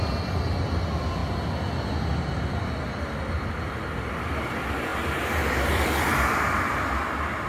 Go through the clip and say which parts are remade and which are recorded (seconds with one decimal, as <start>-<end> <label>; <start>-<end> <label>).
0.0-7.5 recorded